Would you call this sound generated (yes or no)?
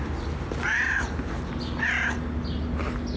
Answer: no